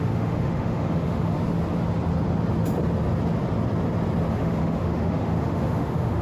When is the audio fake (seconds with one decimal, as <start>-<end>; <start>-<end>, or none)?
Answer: 0.0-1.4; 4.3-6.2